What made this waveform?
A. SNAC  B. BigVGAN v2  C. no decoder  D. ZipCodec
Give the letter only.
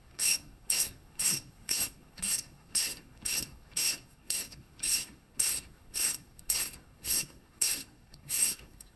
A